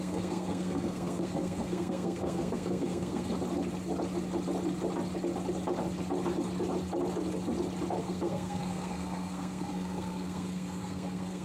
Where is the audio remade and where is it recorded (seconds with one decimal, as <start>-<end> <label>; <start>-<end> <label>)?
0.0-3.3 remade; 3.3-8.0 recorded; 8.0-11.4 remade